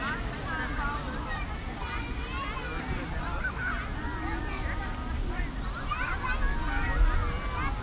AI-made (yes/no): no